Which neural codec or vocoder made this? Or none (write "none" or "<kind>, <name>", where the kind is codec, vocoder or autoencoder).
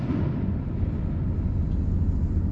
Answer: none